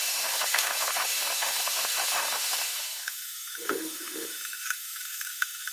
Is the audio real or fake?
fake